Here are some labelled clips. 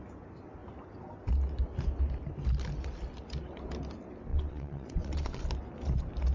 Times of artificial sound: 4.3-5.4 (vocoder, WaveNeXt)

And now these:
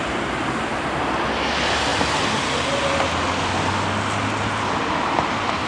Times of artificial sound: none